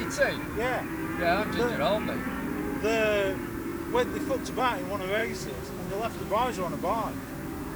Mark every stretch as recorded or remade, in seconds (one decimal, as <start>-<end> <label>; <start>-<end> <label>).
0.0-5.2 recorded; 5.2-7.3 remade; 7.3-7.8 recorded